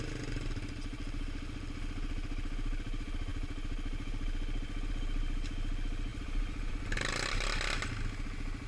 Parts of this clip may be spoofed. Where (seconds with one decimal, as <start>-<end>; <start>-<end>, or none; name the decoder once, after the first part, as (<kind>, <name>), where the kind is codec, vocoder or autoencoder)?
6.1-6.7 (vocoder, BigVGAN v2)